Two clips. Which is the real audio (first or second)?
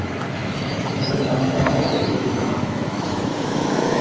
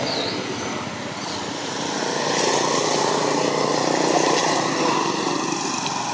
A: second